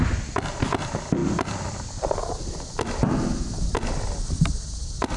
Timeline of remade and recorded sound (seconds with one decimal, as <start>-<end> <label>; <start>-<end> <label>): 0.0-5.2 recorded

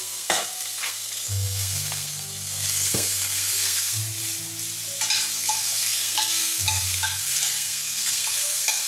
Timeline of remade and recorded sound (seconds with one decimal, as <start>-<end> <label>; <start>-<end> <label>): 0.0-4.0 remade; 4.0-5.3 recorded; 5.3-8.9 remade

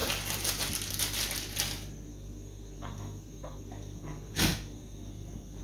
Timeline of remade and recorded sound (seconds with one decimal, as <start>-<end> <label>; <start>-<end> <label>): 0.0-2.1 recorded; 2.1-5.6 remade

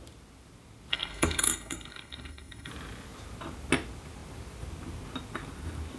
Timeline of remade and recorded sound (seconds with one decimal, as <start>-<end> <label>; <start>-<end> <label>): 0.0-0.9 recorded; 0.9-2.7 remade; 2.7-6.0 recorded